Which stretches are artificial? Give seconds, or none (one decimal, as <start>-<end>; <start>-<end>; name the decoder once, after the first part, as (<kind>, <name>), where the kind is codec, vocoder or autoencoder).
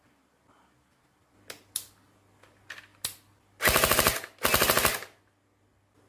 none